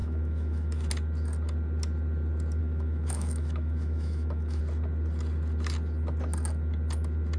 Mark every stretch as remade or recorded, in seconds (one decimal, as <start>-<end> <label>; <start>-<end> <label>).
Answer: 0.0-0.9 remade; 0.9-2.6 recorded; 2.6-4.6 remade; 4.6-7.4 recorded

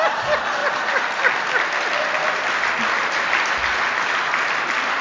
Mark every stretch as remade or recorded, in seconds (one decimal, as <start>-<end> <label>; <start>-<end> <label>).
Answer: 0.0-5.0 recorded

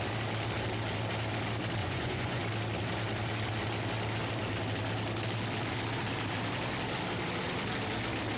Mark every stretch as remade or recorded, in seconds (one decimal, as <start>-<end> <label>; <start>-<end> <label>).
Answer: 0.0-1.8 recorded; 1.8-2.4 remade; 2.4-8.4 recorded

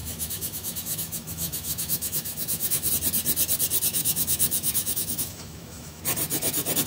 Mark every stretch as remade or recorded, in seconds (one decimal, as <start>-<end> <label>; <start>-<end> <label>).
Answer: 0.0-2.9 remade; 2.9-3.9 recorded; 3.9-6.0 remade; 6.0-6.9 recorded

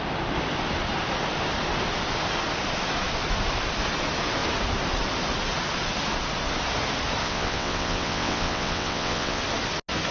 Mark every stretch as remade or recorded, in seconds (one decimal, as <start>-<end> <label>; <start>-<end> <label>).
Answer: 0.0-7.2 recorded; 7.2-9.4 remade; 9.4-10.1 recorded

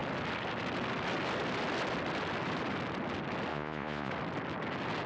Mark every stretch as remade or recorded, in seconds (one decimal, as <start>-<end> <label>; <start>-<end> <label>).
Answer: 0.0-3.5 recorded; 3.5-4.1 remade; 4.1-5.1 recorded